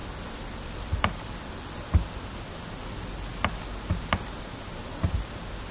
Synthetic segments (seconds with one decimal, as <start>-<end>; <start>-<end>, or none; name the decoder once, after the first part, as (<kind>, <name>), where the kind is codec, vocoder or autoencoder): 0.0-2.5 (vocoder, BigVGAN v2)